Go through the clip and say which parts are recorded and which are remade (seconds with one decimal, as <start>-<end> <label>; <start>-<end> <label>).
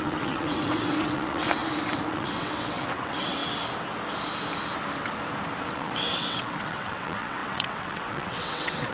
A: 0.0-1.6 remade; 1.6-2.1 recorded; 2.1-3.4 remade; 3.4-5.6 recorded; 5.6-8.9 remade